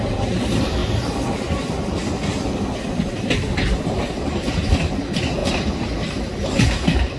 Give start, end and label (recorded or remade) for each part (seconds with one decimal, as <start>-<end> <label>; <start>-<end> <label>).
0.0-0.8 remade; 0.8-3.8 recorded; 3.8-5.4 remade; 5.4-7.2 recorded